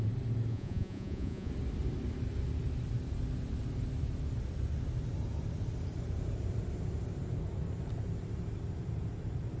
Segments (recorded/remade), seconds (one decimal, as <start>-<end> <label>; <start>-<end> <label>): 0.0-0.5 recorded; 0.5-1.5 remade; 1.5-9.6 recorded

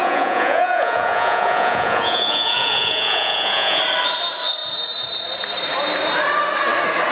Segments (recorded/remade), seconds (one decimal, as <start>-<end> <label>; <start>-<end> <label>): 0.0-3.8 remade; 3.8-7.1 recorded

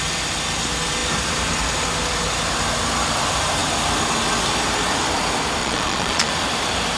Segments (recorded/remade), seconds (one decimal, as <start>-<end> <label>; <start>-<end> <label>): 0.0-5.6 recorded; 5.6-6.3 remade; 6.3-7.0 recorded

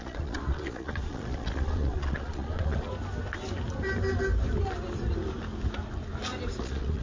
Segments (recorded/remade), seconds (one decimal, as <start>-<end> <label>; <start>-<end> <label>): 0.0-2.9 remade; 2.9-6.6 recorded; 6.6-7.0 remade

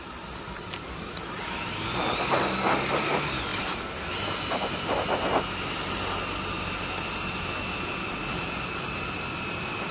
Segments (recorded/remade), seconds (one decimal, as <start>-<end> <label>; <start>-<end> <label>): 0.0-9.9 recorded